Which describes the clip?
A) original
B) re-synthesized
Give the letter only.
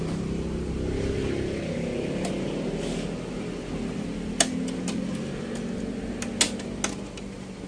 A